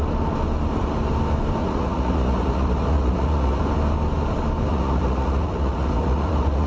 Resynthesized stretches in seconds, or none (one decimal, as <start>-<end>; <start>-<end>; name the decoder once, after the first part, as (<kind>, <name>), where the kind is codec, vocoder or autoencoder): 1.6-3.6 (vocoder, Vocos); 4.7-6.7

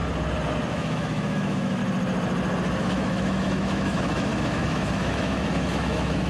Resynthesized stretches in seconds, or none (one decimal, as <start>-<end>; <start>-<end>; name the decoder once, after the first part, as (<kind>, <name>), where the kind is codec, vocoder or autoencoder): 0.7-1.8 (autoencoder, DAC-VAE); 2.8-6.3